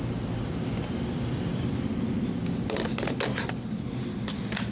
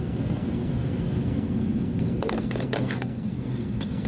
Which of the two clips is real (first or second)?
first